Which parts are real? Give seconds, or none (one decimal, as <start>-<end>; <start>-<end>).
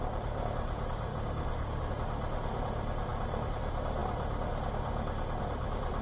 0.0-1.1; 1.9-6.0